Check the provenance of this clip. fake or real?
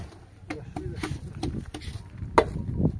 real